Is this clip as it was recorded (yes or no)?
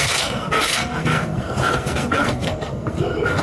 no